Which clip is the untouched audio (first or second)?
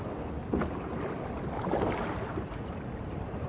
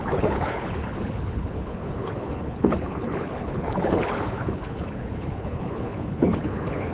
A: first